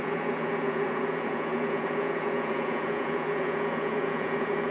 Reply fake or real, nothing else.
fake